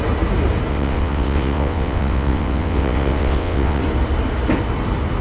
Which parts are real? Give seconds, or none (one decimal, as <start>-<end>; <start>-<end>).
0.0-0.7; 3.8-5.2